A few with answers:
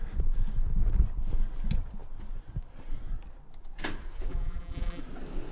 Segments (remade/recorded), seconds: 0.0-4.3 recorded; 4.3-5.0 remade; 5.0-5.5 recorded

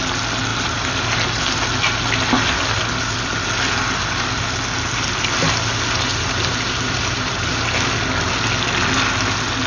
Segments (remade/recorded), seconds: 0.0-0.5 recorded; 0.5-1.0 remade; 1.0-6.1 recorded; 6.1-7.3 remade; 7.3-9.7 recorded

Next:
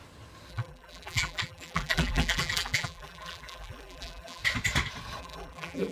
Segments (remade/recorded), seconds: 0.0-0.5 recorded; 0.5-4.4 remade; 4.4-5.2 recorded; 5.2-5.9 remade

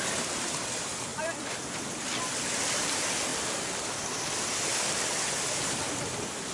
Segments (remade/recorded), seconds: 0.0-3.3 recorded; 3.3-4.0 remade; 4.0-6.5 recorded

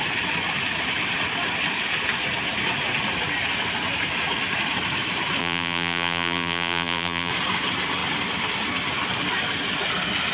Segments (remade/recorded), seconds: 0.0-5.4 recorded; 5.4-7.3 remade; 7.3-10.3 recorded

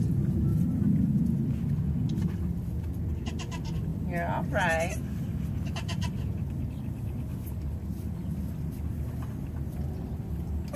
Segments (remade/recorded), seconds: 0.0-0.5 recorded; 0.5-1.1 remade; 1.1-10.8 recorded

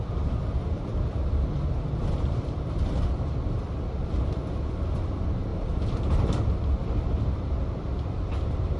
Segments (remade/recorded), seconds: 0.0-0.6 recorded; 0.6-3.5 remade; 3.5-5.5 recorded; 5.5-6.2 remade; 6.2-8.8 recorded